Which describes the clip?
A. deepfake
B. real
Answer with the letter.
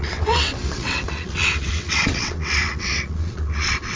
A